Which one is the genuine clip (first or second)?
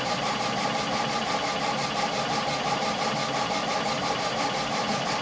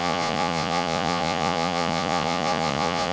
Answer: first